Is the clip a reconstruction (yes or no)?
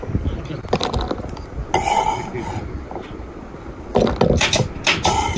no